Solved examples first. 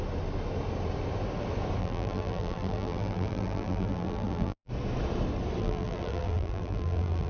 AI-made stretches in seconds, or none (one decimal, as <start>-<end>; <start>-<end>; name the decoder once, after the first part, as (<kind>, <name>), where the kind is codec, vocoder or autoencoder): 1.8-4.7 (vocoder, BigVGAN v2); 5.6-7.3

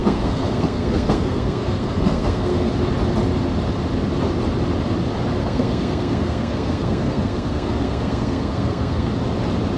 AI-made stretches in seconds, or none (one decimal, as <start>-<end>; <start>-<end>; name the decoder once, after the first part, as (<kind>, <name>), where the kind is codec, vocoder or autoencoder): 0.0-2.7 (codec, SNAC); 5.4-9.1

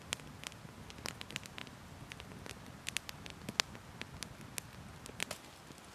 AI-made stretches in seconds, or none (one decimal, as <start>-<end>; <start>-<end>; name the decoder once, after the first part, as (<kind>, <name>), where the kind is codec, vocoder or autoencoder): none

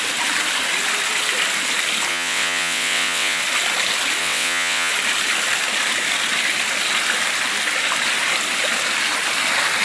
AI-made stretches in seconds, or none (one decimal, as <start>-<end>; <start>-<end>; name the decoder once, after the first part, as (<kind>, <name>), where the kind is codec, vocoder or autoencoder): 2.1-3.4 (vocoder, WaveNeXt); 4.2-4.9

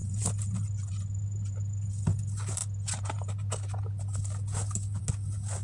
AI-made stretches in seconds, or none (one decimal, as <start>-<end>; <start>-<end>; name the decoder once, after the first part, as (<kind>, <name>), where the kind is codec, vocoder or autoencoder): none

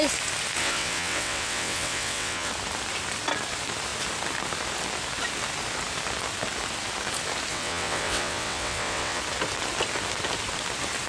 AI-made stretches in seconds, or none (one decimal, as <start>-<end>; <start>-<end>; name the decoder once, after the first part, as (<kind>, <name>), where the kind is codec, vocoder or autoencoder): 0.6-2.5 (vocoder, WaveNeXt); 7.5-9.2

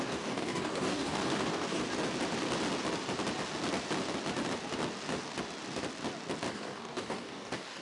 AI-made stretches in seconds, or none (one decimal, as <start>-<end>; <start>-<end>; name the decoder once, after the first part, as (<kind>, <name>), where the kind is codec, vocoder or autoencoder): 0.0-1.8 (codec, DAC); 6.5-7.8

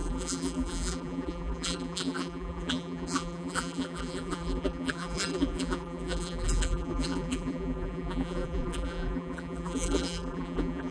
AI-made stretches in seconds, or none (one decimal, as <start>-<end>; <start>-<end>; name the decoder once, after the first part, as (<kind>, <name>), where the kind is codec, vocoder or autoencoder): 0.0-10.9 (vocoder, BigVGAN v2)